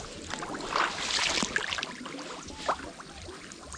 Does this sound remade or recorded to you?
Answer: recorded